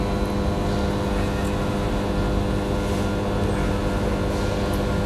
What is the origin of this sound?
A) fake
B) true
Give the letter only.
B